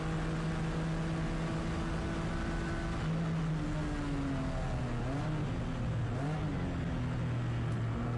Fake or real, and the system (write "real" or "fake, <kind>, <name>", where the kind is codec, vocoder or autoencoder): real